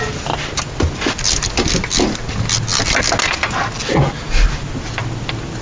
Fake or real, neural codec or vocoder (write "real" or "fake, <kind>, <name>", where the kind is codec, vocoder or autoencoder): real